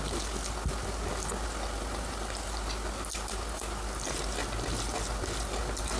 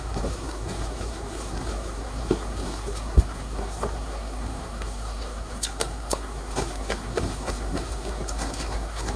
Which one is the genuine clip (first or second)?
first